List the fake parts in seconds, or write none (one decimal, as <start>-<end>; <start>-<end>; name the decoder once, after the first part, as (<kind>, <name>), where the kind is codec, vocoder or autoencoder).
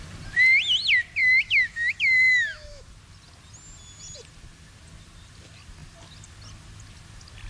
1.2-2.9 (autoencoder, DAC-VAE)